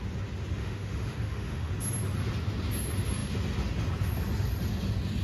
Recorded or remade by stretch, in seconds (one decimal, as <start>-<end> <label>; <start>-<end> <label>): 0.0-0.6 recorded; 0.6-1.7 remade; 1.7-5.2 recorded